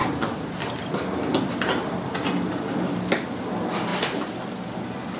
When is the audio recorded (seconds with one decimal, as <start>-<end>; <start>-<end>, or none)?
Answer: 0.0-5.2